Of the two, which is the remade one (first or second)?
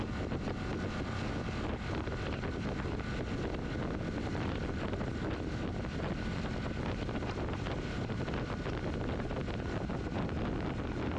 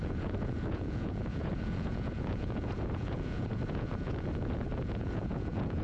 second